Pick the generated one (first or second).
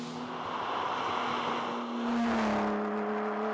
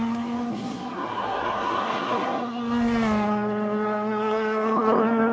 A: second